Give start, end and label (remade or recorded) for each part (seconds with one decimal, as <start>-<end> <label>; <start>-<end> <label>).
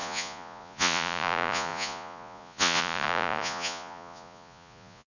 0.0-5.2 remade